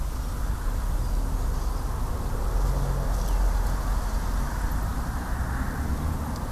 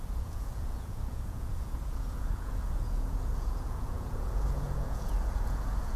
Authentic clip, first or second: first